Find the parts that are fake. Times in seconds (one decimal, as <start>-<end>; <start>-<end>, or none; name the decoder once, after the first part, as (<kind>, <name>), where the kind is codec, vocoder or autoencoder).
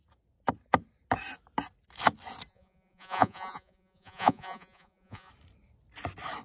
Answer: 2.5-5.3 (vocoder, Vocos)